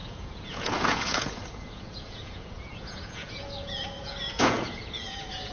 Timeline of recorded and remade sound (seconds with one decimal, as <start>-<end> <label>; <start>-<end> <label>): 0.0-5.5 remade